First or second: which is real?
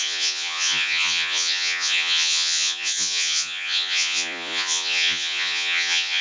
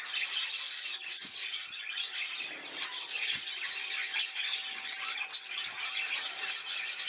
second